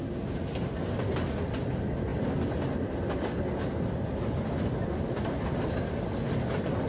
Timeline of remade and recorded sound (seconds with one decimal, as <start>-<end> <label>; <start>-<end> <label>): 0.0-6.9 recorded